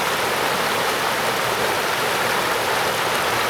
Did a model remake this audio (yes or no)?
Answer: no